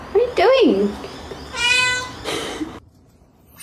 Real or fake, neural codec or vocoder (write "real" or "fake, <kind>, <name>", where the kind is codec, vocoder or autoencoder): fake, vocoder, BigVGAN v2